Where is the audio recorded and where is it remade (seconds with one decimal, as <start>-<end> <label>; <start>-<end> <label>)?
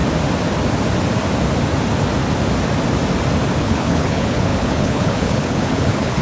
0.0-3.6 recorded; 3.6-6.2 remade